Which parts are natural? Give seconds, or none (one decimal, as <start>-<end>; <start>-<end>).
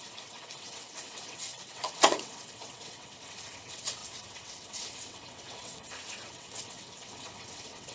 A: none